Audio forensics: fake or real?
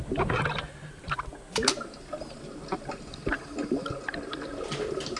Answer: real